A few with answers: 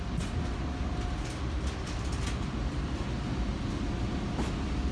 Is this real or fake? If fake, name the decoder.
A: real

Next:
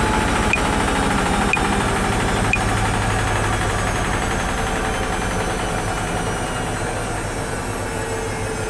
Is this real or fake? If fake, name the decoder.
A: real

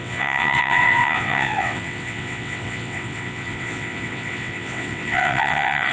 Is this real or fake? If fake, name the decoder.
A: fake, vocoder, WaveNeXt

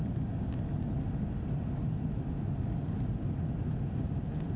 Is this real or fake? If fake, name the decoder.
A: real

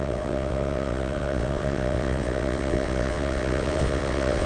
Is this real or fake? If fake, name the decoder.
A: fake, vocoder, WaveNeXt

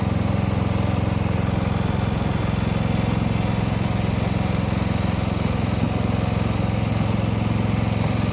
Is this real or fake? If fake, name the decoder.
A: real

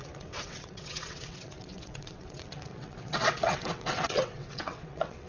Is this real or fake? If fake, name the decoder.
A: fake, vocoder, WaveNeXt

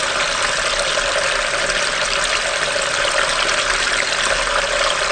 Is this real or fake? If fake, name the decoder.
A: real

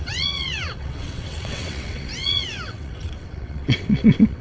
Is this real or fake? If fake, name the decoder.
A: fake, vocoder, WaveNeXt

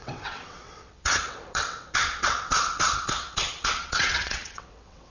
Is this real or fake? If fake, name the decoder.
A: fake, vocoder, WaveNeXt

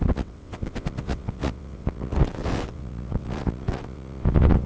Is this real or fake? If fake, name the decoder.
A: fake, vocoder, WaveNeXt